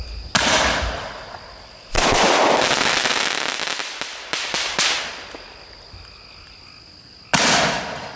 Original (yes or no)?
yes